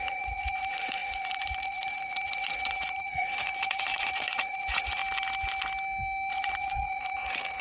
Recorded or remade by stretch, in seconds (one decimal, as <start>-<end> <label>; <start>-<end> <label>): 0.0-5.0 remade; 5.0-6.3 recorded; 6.3-7.6 remade